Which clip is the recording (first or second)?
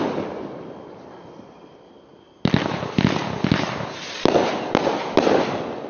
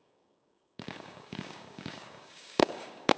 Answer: first